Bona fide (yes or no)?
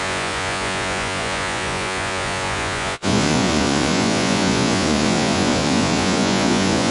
no